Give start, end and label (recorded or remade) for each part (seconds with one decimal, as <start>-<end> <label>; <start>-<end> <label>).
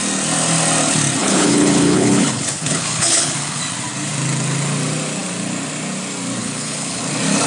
0.0-1.2 recorded; 1.2-3.6 remade; 3.6-6.4 recorded; 6.4-7.0 remade; 7.0-7.5 recorded